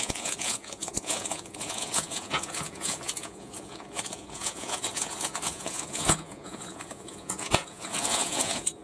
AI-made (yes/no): yes